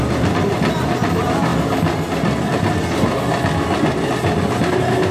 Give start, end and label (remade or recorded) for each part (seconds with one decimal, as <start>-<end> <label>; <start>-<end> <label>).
0.0-5.1 recorded